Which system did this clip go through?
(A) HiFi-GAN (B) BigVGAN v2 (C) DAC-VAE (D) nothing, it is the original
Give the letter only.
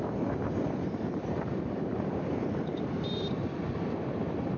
B